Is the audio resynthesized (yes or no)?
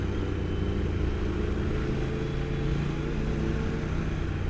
no